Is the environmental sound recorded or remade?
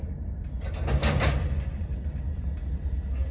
recorded